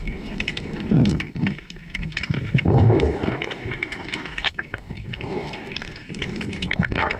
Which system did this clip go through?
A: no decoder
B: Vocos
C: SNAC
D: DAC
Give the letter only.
D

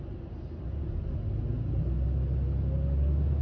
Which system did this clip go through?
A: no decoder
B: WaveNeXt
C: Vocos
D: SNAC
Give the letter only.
A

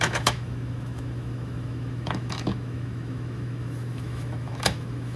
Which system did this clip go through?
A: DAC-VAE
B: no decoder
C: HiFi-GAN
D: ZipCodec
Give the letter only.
A